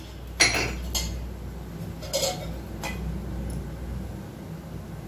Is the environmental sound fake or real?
real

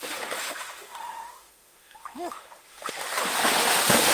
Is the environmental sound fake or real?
fake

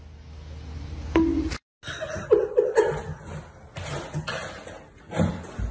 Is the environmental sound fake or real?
real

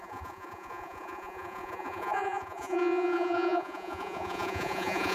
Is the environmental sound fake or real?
fake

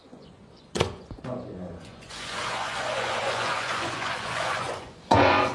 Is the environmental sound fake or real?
fake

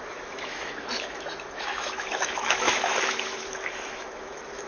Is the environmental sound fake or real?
fake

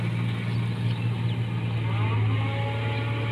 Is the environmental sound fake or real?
real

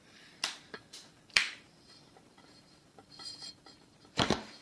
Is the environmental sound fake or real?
fake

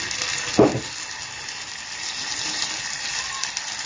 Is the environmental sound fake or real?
real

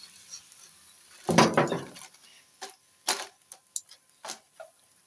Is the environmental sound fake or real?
real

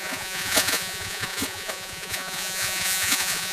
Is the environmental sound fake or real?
fake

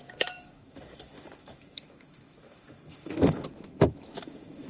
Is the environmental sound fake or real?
fake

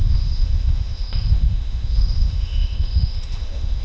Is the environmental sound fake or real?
fake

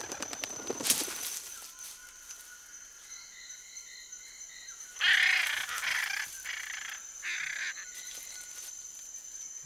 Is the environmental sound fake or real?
real